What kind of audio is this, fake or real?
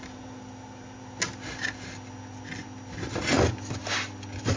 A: real